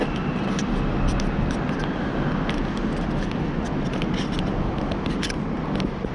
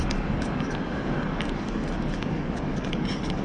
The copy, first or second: second